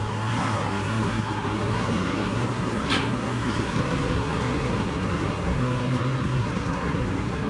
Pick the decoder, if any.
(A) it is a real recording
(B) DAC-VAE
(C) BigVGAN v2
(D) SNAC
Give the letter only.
D